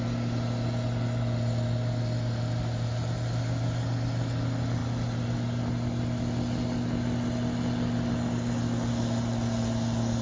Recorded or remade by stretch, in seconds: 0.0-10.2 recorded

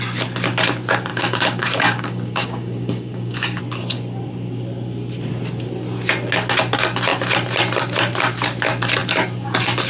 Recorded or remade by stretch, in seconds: 0.0-1.1 recorded; 1.1-3.6 remade; 3.6-9.9 recorded

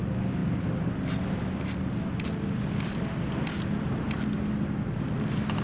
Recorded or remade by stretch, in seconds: 0.0-5.6 recorded

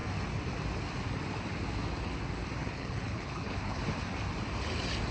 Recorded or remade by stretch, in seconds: 0.0-2.6 recorded; 2.6-3.8 remade; 3.8-5.1 recorded

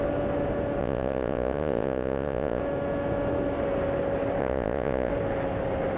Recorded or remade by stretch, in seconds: 0.0-0.8 recorded; 0.8-2.6 remade; 2.6-4.4 recorded; 4.4-5.1 remade; 5.1-6.0 recorded

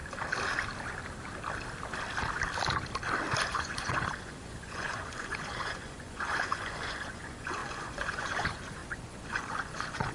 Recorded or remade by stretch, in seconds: 0.0-3.5 recorded; 3.5-10.1 remade